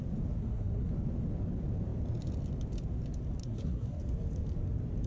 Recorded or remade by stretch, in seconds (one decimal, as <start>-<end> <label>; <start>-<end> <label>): 0.0-0.4 recorded; 0.4-0.9 remade; 0.9-3.4 recorded; 3.4-4.0 remade; 4.0-5.1 recorded